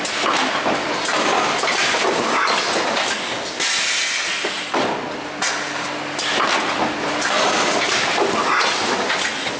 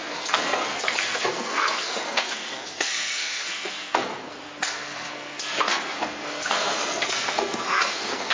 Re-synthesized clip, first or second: second